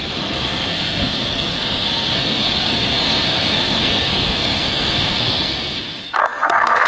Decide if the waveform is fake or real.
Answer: fake